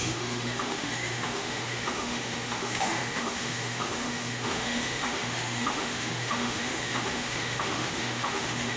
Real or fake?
fake